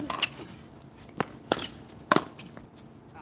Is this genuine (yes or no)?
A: yes